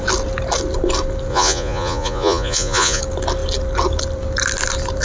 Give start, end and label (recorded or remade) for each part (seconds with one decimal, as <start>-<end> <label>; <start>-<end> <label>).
0.0-1.3 recorded; 1.3-3.0 remade; 3.0-5.0 recorded